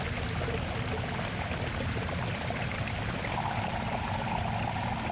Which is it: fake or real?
real